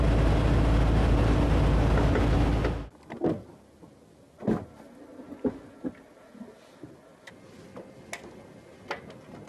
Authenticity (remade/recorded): recorded